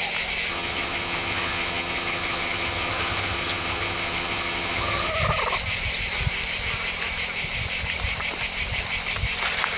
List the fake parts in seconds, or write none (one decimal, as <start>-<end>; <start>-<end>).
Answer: 0.5-5.1

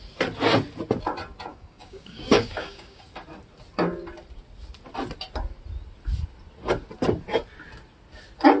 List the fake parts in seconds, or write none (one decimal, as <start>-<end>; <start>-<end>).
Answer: 1.5-3.0

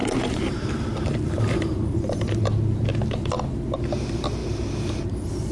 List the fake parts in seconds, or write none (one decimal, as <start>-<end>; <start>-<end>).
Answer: 0.0-3.3

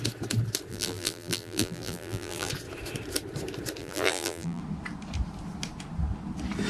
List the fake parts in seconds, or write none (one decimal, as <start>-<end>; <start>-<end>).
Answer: 0.7-2.5; 3.8-4.6

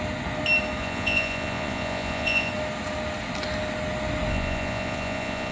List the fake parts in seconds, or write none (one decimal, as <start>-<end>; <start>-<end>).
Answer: 0.8-2.5; 4.3-5.5